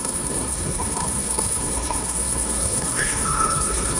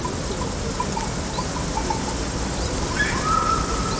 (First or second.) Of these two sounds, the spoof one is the first